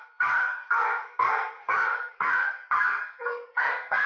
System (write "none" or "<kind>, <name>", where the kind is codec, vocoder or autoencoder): codec, SNAC